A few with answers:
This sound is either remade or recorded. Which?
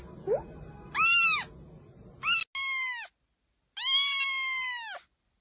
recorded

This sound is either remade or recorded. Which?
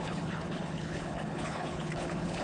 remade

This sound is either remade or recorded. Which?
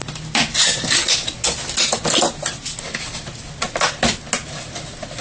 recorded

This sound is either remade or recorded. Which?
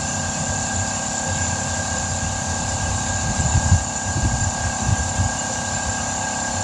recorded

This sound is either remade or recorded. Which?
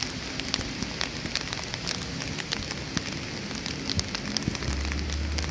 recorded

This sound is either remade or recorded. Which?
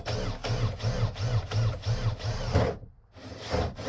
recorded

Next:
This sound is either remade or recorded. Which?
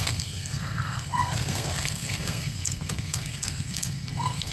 remade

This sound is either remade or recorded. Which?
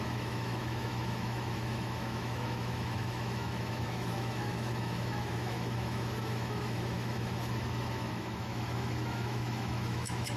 remade